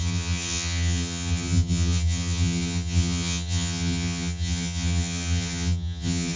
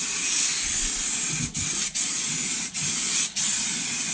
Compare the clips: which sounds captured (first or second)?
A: second